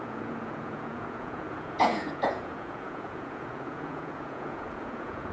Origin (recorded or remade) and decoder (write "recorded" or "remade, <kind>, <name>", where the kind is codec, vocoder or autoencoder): remade, vocoder, Vocos